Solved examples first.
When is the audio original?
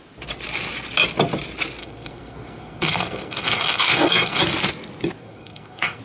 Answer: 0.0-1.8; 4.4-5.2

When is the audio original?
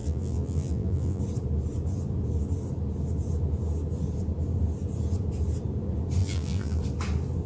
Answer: 1.2-6.2; 6.8-7.5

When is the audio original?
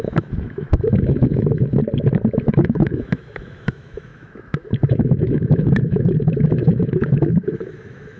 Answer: 1.8-2.3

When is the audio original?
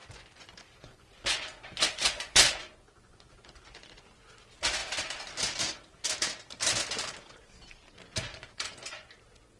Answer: 4.3-8.3; 9.1-9.6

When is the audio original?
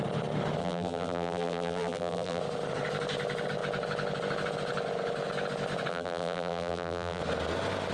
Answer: 0.0-0.6; 2.4-5.9; 7.2-7.9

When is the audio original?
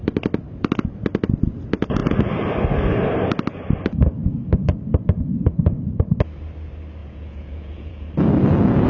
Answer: 0.0-7.0; 8.1-8.9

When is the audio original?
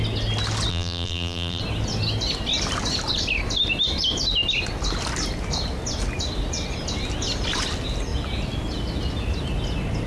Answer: 0.0-0.7; 1.6-10.1